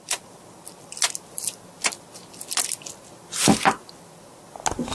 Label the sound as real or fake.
real